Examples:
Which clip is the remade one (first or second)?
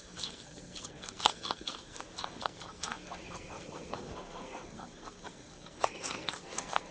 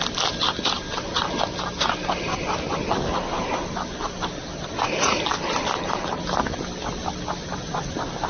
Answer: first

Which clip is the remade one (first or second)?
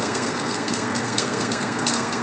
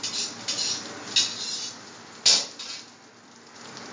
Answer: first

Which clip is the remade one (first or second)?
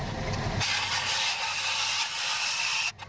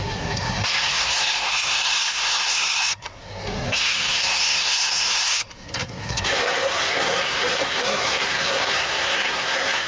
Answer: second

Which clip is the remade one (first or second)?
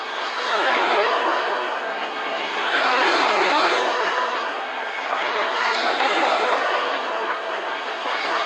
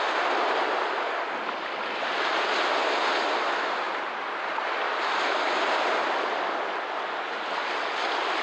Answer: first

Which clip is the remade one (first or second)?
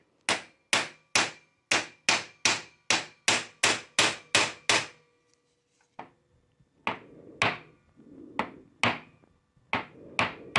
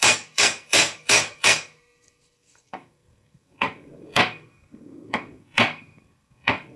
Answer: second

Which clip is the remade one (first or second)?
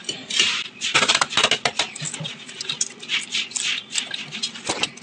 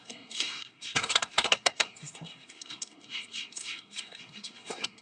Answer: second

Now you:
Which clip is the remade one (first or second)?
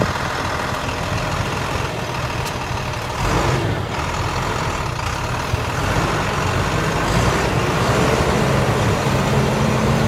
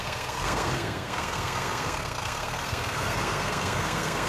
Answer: second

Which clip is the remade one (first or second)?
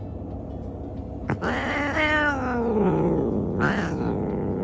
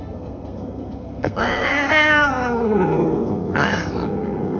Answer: second